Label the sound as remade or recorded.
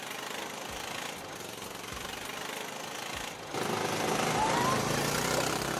recorded